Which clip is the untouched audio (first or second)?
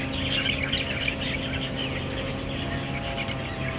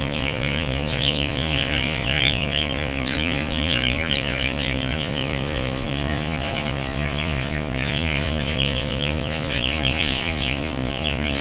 first